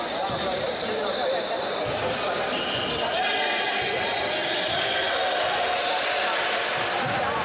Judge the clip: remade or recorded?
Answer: recorded